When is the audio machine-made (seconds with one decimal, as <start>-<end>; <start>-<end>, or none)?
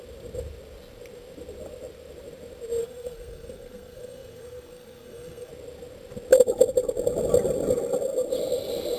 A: 2.8-5.5